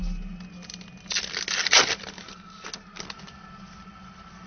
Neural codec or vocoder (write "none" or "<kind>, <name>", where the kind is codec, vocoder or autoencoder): none